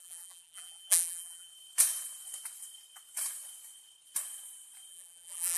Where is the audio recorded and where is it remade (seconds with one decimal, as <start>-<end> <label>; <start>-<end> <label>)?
0.0-1.5 remade; 1.5-4.9 recorded; 4.9-5.6 remade